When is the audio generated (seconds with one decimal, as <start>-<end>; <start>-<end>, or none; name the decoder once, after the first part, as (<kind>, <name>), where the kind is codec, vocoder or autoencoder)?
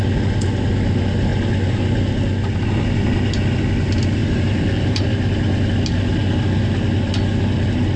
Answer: 4.2-5.0 (vocoder, BigVGAN v2)